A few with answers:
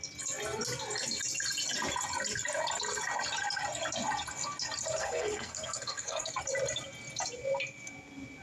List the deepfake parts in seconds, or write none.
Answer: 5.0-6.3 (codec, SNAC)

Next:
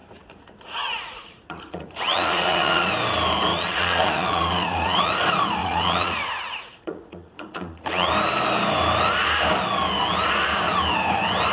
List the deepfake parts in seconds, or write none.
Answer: 0.0-2.9 (vocoder, Vocos); 3.5-5.1; 5.6-8.1

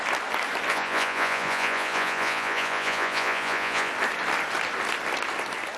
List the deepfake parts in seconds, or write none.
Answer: 0.7-3.9 (vocoder, Vocos)

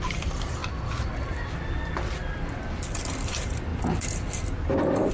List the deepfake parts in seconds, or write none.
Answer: 0.0-0.6 (vocoder, BigVGAN v2); 1.8-3.7

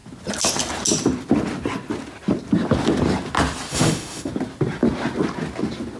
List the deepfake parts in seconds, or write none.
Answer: 3.7-4.3 (autoencoder, DAC-VAE)